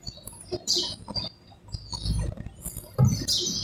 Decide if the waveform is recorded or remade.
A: recorded